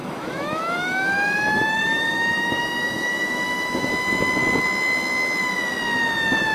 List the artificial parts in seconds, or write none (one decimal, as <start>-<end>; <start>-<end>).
0.0-3.9